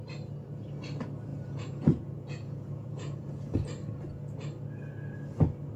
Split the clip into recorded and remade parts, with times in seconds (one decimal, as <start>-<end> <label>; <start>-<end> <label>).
0.0-1.3 recorded; 1.3-3.4 remade; 3.4-5.8 recorded